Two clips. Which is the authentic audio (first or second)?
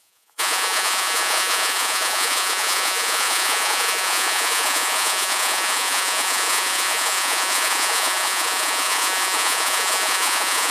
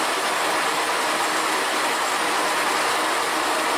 second